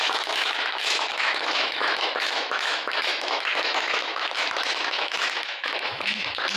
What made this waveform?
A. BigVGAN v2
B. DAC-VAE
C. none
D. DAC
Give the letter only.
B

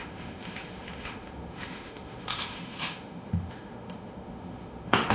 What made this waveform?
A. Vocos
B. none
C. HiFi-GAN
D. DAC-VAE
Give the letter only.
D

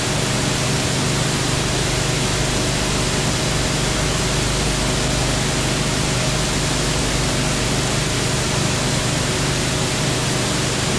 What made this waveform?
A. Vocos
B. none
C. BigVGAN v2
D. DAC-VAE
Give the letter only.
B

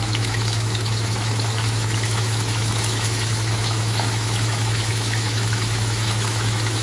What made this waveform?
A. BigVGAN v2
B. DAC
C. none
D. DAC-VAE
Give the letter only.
D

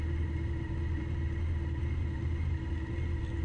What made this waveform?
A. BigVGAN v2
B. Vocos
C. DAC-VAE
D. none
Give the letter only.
D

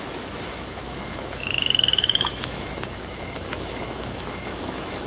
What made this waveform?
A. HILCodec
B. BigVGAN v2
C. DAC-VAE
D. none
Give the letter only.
C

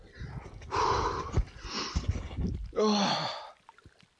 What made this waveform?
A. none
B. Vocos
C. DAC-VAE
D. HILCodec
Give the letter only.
A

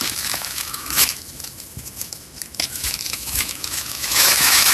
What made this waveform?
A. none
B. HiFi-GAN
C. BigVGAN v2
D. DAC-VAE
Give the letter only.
D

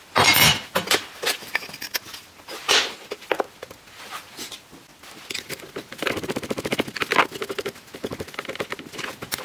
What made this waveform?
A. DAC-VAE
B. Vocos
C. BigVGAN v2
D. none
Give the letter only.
D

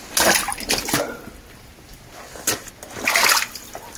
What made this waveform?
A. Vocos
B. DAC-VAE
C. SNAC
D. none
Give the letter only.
D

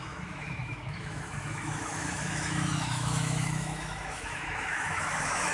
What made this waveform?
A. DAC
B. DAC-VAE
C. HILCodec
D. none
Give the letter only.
B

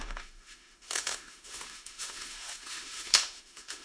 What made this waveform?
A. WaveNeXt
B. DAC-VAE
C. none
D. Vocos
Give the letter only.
B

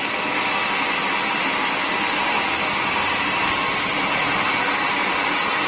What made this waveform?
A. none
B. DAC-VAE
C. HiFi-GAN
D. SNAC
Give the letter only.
A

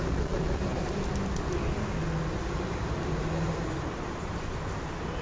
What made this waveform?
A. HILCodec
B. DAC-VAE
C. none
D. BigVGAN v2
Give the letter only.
C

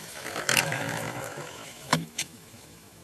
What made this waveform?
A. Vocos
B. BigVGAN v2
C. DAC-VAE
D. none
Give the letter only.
C